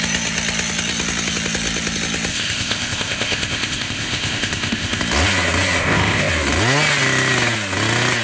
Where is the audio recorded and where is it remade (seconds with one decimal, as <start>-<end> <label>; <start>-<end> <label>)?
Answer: 0.0-2.3 recorded; 2.3-5.0 remade; 5.0-5.8 recorded; 5.8-6.3 remade; 6.3-8.2 recorded